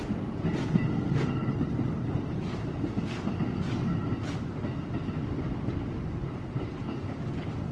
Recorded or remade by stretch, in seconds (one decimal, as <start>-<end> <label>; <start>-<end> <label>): 0.0-7.7 recorded